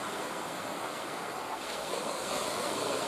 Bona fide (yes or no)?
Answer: no